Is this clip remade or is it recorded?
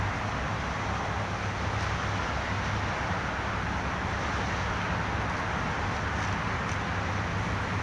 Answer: recorded